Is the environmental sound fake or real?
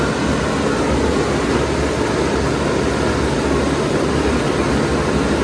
real